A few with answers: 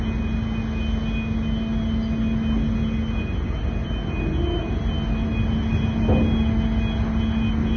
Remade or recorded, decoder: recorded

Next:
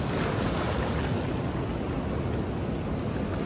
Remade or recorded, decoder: recorded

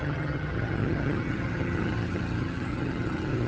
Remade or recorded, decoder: remade, vocoder, HiFi-GAN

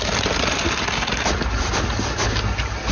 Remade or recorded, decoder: recorded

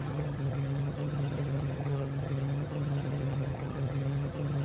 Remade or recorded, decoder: remade, vocoder, HiFi-GAN